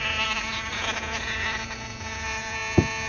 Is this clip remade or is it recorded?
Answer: remade